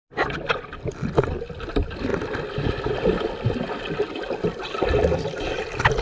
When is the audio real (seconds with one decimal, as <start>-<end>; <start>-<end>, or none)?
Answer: 0.0-1.7; 2.1-6.0